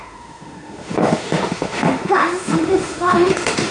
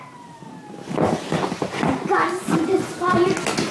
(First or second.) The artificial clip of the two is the first